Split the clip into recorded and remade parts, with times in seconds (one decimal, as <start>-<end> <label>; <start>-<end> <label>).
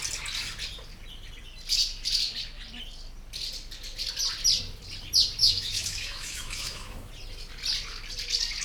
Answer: 0.0-5.4 recorded; 5.4-7.1 remade; 7.1-8.6 recorded